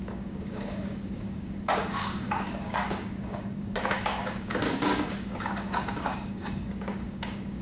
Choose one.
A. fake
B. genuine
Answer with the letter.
A